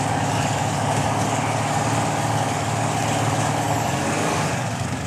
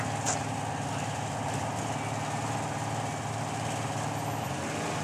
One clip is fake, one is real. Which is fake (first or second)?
first